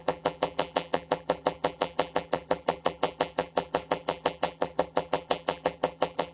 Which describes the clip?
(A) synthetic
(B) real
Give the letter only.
A